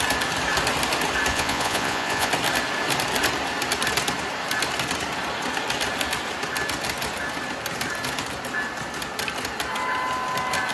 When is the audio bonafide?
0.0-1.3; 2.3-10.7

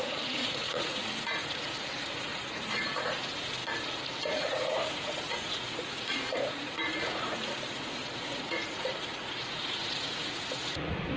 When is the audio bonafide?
none

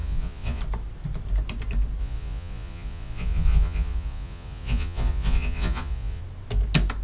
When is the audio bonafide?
0.6-2.0; 6.2-7.0

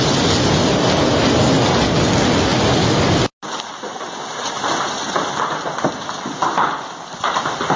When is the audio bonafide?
0.0-7.8

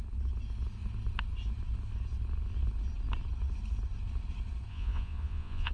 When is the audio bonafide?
0.0-4.7

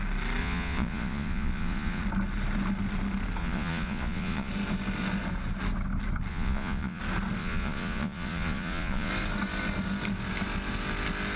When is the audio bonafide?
0.0-0.4; 2.0-3.4; 4.5-6.3; 7.0-7.4; 9.1-11.4

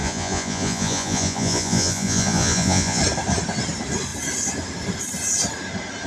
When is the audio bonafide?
3.0-6.1

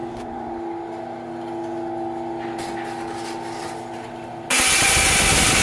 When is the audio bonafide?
0.5-5.6